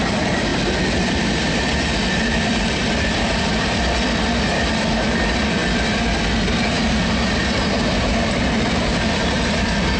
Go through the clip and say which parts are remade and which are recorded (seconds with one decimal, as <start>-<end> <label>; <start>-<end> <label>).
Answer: 0.0-0.5 remade; 0.5-2.1 recorded; 2.1-5.6 remade; 5.6-8.2 recorded; 8.2-10.0 remade